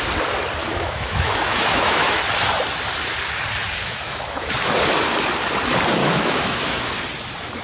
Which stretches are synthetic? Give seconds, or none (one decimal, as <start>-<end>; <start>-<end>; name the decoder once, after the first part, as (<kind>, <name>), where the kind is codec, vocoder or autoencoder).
0.6-2.2 (autoencoder, DAC-VAE); 3.8-4.5; 6.0-7.0